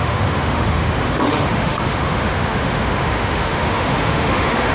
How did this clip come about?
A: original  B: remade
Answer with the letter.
B